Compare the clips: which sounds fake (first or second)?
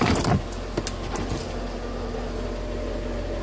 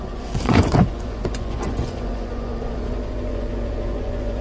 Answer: second